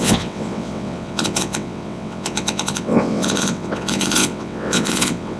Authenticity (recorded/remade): remade